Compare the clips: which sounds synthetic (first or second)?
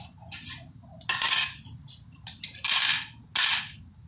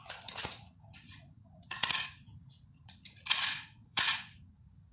second